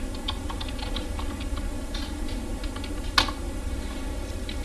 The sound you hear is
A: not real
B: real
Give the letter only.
B